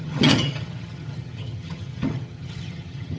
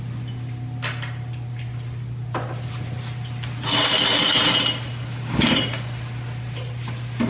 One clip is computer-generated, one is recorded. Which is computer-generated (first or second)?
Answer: first